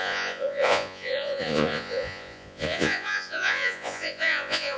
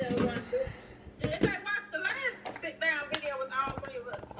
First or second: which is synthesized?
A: first